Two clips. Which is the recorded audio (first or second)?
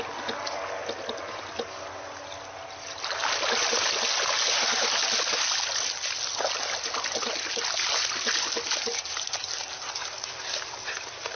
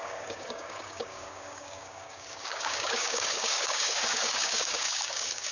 first